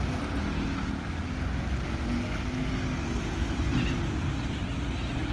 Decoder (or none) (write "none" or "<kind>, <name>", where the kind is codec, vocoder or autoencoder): none